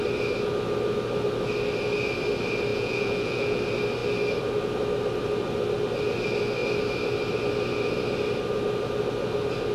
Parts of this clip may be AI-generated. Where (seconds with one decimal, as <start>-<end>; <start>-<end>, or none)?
2.7-3.6